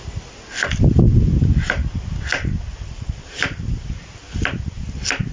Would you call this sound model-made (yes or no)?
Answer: no